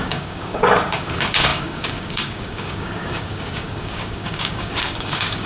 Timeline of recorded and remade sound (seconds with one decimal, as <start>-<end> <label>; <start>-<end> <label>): 0.0-5.5 remade